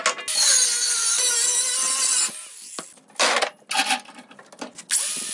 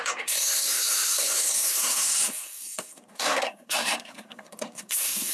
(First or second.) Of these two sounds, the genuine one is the first